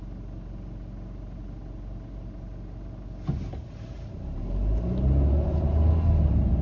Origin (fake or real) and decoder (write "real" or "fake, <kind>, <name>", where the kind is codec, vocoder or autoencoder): real